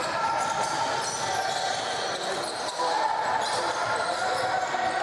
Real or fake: real